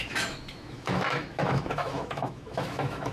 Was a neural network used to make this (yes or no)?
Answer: yes